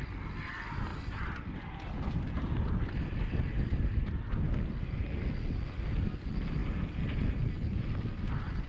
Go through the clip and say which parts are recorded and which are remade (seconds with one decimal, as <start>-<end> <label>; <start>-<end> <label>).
0.0-8.7 recorded